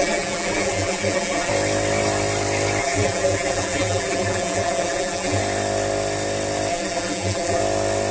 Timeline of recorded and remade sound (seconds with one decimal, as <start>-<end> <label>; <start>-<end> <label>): 0.0-1.5 remade; 1.5-2.8 recorded; 2.8-5.4 remade; 5.4-6.7 recorded; 6.7-7.6 remade; 7.6-8.1 recorded